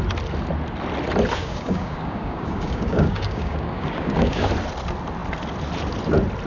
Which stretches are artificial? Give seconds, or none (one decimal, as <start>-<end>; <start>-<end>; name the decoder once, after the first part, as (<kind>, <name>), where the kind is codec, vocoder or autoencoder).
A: 1.4-4.5 (codec, DAC)